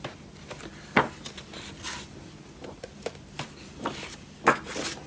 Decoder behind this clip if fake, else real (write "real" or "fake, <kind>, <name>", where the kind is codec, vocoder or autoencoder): real